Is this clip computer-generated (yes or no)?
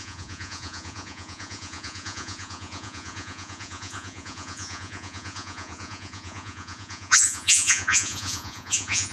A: yes